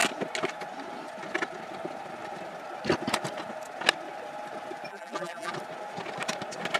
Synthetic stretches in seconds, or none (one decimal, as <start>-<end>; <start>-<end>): 4.9-5.5